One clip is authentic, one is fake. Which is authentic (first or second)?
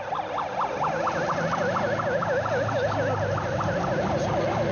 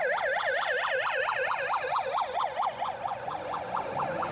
first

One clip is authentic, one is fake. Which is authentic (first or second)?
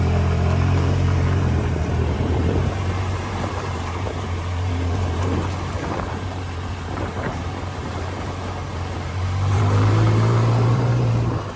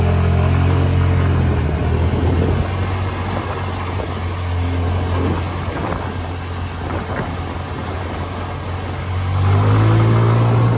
second